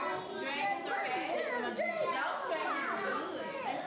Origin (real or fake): real